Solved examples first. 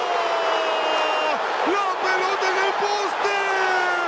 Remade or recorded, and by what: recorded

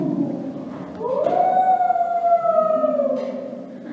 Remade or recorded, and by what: recorded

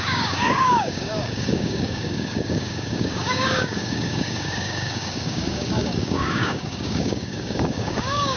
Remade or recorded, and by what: remade, codec, DAC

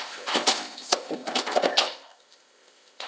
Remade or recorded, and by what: remade, codec, ZipCodec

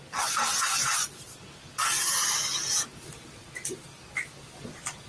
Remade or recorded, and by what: recorded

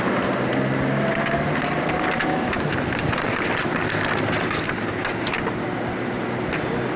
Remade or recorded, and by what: recorded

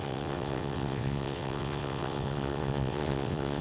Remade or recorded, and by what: remade, vocoder, WaveNeXt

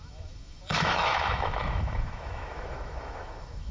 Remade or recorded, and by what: remade, autoencoder, DAC-VAE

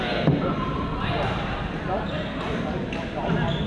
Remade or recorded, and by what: recorded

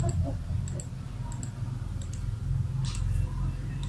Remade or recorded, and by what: recorded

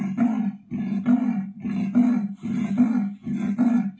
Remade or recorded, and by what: recorded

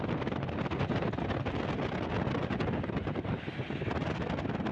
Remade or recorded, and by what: recorded